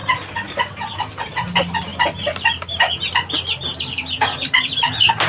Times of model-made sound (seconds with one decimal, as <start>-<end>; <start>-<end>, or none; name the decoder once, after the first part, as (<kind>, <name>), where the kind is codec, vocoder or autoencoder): 0.9-5.3 (vocoder, BigVGAN v2)